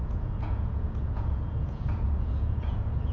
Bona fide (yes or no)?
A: no